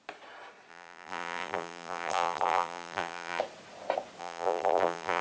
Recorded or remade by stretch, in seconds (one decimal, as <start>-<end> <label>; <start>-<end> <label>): 0.0-0.7 recorded; 0.7-3.4 remade; 3.4-4.2 recorded; 4.2-5.2 remade